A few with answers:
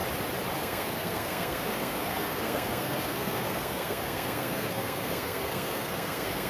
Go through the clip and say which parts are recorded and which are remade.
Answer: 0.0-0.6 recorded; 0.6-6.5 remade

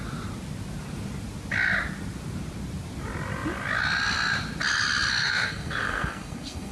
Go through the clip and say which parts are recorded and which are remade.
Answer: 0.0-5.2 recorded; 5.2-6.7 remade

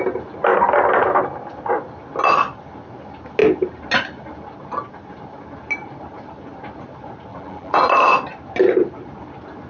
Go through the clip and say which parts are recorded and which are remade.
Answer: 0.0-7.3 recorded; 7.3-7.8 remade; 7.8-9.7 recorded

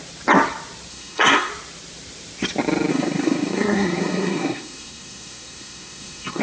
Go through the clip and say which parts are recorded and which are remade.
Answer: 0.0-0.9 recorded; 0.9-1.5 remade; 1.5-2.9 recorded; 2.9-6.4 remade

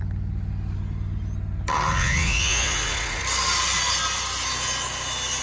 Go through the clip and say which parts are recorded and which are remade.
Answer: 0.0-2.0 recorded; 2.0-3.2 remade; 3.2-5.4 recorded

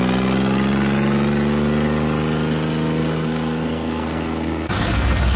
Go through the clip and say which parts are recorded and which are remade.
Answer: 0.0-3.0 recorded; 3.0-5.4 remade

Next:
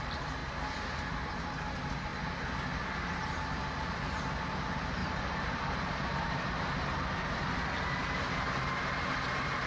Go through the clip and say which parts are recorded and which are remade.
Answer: 0.0-5.0 recorded; 5.0-6.5 remade; 6.5-9.7 recorded

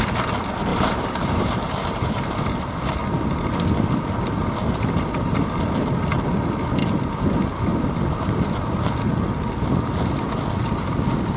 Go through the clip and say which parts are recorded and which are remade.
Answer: 0.0-0.7 recorded; 0.7-2.1 remade; 2.1-6.8 recorded; 6.8-7.3 remade; 7.3-7.7 recorded; 7.7-8.7 remade; 8.7-11.4 recorded